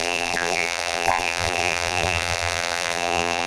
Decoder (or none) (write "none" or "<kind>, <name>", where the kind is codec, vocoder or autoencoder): vocoder, BigVGAN v2